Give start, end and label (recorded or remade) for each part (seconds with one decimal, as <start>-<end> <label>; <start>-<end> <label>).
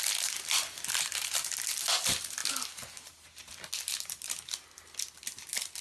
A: 0.0-5.8 recorded